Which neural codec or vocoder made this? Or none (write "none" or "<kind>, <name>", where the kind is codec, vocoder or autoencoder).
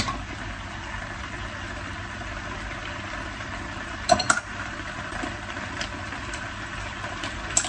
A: vocoder, BigVGAN v2